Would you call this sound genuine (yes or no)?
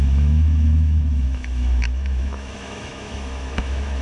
no